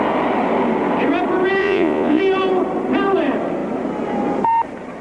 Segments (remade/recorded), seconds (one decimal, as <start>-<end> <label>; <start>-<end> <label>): 0.0-1.6 recorded; 1.6-2.2 remade; 2.2-5.0 recorded